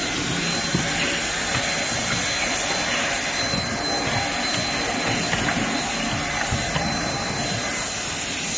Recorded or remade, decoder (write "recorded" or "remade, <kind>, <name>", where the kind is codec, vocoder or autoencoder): recorded